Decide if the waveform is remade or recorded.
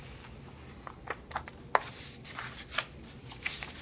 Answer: recorded